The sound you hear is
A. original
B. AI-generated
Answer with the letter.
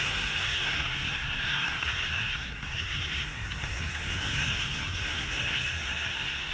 B